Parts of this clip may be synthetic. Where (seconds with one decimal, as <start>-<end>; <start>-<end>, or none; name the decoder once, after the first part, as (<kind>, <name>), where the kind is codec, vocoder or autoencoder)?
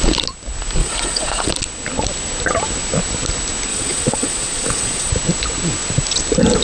0.8-1.5 (vocoder, Vocos); 3.7-5.1